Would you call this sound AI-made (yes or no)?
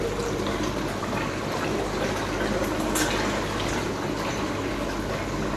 no